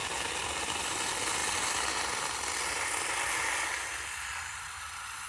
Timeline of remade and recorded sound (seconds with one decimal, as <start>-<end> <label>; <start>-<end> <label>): 0.0-5.3 recorded

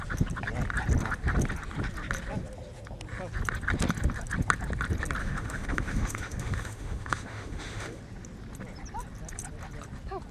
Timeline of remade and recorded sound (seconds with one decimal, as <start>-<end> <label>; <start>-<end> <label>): 0.0-5.2 recorded; 5.2-8.0 remade; 8.0-10.3 recorded

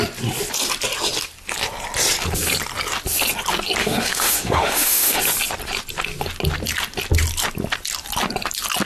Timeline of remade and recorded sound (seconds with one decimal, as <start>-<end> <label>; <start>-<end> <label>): 0.0-3.8 recorded; 3.8-5.2 remade; 5.2-8.9 recorded

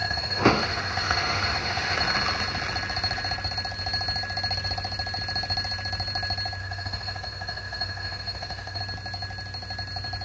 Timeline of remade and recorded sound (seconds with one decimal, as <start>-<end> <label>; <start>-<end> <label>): 0.0-2.0 remade; 2.0-6.6 recorded; 6.6-8.8 remade; 8.8-10.2 recorded

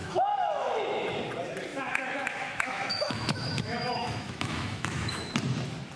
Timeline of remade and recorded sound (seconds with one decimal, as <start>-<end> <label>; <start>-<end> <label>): 0.0-0.8 remade; 0.8-1.7 recorded; 1.7-5.3 remade; 5.3-6.0 recorded

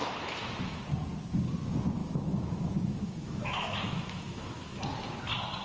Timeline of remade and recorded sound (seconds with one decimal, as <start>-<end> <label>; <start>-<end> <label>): 0.0-0.8 remade; 0.8-2.0 recorded; 2.0-4.8 remade; 4.8-5.6 recorded